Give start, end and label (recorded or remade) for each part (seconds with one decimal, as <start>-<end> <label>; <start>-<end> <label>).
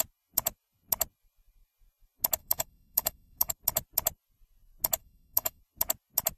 0.0-2.4 recorded; 2.4-3.5 remade; 3.5-5.0 recorded; 5.0-5.6 remade; 5.6-6.4 recorded